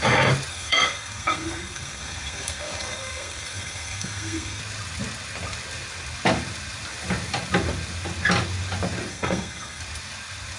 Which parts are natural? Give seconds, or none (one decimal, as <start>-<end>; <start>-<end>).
0.0-0.5; 4.6-9.1; 9.8-10.6